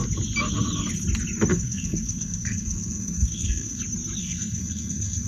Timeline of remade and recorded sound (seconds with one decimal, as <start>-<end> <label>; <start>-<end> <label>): 0.0-1.5 recorded; 1.5-3.8 remade; 3.8-4.2 recorded; 4.2-5.3 remade